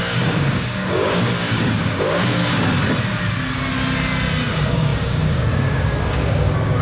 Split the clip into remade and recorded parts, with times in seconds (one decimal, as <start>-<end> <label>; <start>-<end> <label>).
0.0-2.4 remade; 2.4-4.5 recorded; 4.5-6.8 remade